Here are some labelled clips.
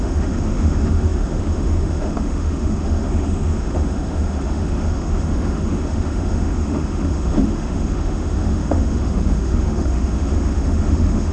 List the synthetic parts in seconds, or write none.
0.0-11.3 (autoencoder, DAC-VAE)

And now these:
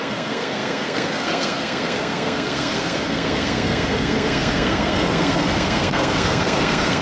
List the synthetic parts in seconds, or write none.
0.0-7.0 (codec, SNAC)